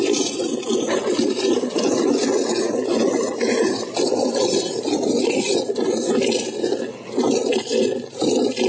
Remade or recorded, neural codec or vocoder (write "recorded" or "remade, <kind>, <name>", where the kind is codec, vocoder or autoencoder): recorded